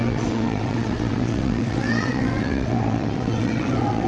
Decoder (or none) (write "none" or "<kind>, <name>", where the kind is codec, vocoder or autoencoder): vocoder, WaveNeXt